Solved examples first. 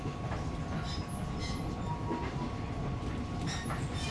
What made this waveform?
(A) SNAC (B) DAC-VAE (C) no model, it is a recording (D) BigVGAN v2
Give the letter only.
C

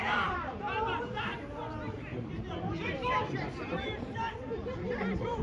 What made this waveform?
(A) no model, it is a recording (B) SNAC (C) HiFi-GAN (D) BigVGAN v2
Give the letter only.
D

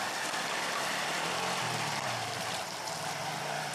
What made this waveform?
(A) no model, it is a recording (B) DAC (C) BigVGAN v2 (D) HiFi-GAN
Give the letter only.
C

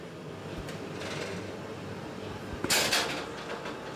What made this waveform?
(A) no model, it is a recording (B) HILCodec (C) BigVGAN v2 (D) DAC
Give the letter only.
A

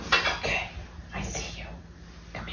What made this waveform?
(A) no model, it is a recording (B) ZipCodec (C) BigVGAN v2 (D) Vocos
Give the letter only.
A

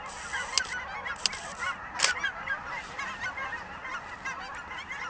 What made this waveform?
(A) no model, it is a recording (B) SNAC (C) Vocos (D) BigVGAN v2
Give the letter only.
A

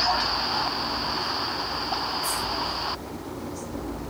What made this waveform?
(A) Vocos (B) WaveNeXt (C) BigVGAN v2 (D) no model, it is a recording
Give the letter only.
D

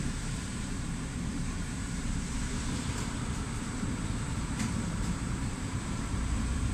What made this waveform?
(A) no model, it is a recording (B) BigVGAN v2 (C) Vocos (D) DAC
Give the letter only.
B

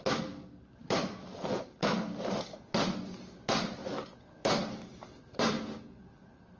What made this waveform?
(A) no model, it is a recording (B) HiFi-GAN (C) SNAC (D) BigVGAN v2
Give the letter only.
A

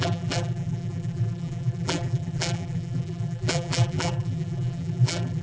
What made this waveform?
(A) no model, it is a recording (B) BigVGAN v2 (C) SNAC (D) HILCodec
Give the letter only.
B